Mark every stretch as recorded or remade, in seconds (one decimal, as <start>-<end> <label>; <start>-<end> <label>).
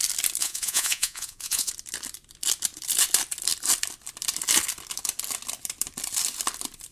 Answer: 0.0-0.4 recorded; 0.4-1.7 remade; 1.7-6.9 recorded